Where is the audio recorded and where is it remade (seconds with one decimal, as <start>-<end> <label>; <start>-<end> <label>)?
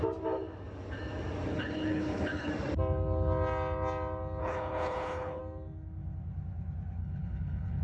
0.0-1.5 recorded; 1.5-2.5 remade; 2.5-4.4 recorded; 4.4-5.4 remade; 5.4-7.0 recorded; 7.0-7.8 remade